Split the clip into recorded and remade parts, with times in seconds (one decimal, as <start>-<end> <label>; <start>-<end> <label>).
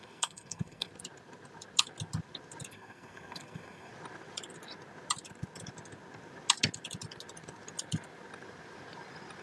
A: 0.0-0.9 remade; 0.9-2.7 recorded; 2.7-3.9 remade; 3.9-9.4 recorded